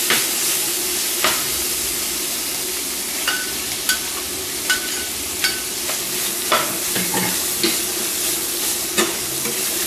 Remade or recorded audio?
recorded